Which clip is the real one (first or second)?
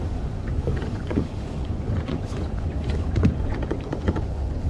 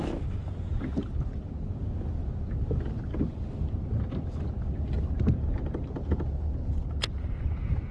second